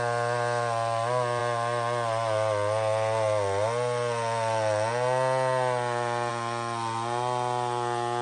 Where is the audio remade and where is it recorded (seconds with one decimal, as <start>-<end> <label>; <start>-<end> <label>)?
0.0-8.2 recorded

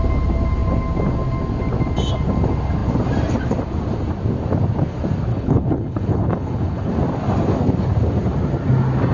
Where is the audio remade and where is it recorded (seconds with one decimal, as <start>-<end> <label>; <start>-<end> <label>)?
0.0-5.3 recorded; 5.3-6.9 remade; 6.9-9.1 recorded

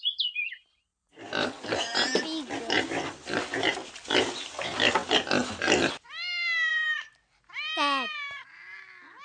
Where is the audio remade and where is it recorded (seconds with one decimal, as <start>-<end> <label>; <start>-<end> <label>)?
0.0-6.7 recorded; 6.7-7.4 remade; 7.4-9.2 recorded